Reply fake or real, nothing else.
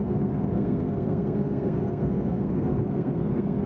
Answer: fake